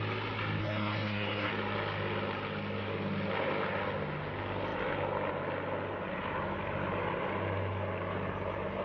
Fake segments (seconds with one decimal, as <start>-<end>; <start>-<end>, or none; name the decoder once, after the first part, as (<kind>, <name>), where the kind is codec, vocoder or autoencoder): 0.6-1.5 (codec, SNAC)